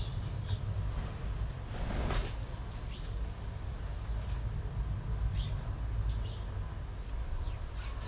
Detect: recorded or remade recorded